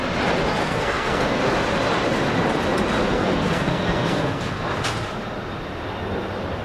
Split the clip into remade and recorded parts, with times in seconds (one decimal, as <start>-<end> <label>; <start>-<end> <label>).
0.0-0.6 recorded; 0.6-1.4 remade; 1.4-3.0 recorded; 3.0-4.7 remade; 4.7-6.6 recorded

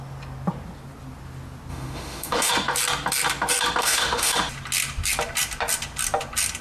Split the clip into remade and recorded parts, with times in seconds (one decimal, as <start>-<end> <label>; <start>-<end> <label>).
0.0-1.7 recorded; 1.7-2.5 remade; 2.5-3.8 recorded; 3.8-4.4 remade; 4.4-6.6 recorded

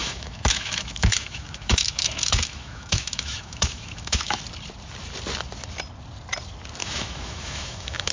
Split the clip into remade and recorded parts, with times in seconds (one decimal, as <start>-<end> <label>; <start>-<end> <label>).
0.0-4.4 remade; 4.4-6.8 recorded; 6.8-8.1 remade